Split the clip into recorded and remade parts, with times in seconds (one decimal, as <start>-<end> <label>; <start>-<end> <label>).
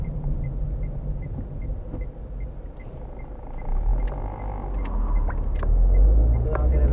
0.0-6.9 recorded